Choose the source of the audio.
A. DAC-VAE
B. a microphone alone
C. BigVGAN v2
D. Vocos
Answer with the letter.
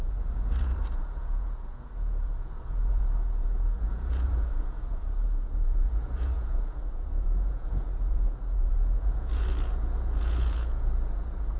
D